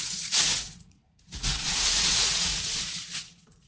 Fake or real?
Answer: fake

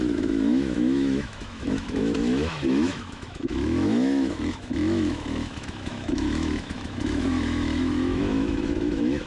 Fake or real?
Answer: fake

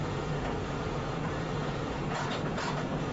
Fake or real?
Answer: fake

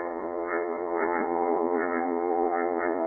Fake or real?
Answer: fake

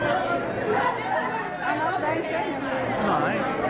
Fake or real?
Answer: real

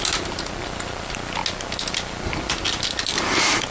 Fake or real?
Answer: real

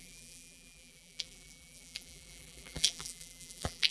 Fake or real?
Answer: fake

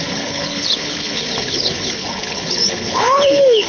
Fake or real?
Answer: fake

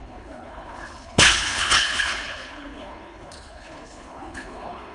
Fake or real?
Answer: fake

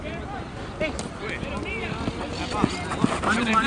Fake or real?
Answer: real